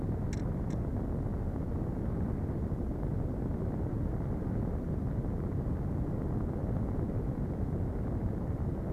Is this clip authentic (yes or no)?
yes